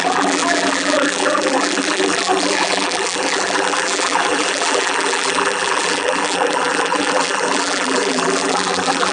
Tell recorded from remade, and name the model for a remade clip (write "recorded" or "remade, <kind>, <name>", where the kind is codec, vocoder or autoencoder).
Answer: remade, vocoder, BigVGAN v2